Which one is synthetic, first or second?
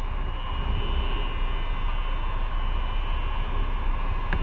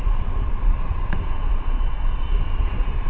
second